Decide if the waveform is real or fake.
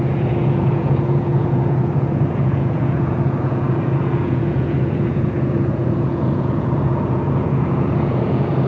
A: fake